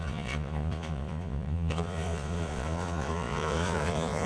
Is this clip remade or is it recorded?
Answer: remade